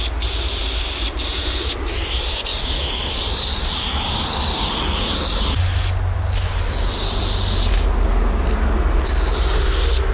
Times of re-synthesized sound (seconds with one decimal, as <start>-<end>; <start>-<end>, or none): none